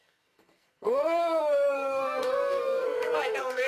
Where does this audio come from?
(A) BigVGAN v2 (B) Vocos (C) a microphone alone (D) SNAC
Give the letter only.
D